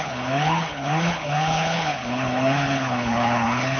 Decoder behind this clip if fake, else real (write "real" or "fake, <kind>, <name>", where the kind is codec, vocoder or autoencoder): fake, codec, HILCodec